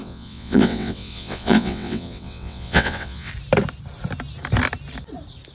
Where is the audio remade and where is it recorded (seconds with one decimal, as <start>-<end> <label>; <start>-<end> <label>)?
0.0-3.3 remade; 3.3-5.5 recorded